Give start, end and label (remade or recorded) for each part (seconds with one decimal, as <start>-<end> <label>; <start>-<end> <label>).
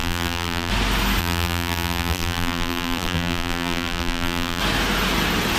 0.0-0.7 remade; 0.7-1.2 recorded; 1.2-4.6 remade; 4.6-5.6 recorded